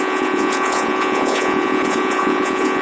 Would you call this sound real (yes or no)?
no